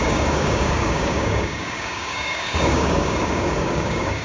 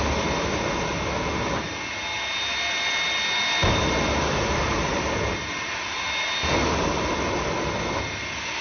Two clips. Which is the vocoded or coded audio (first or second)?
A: first